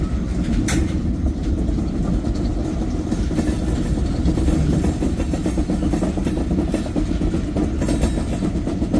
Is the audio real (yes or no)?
yes